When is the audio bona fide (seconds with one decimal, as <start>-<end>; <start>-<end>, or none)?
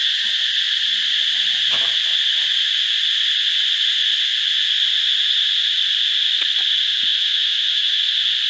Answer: 0.0-7.1; 8.0-8.5